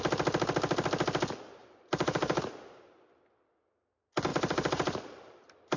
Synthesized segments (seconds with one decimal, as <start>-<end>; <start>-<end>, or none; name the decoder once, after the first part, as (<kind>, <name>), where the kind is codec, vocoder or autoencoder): 1.6-2.4 (vocoder, BigVGAN v2); 4.3-5.8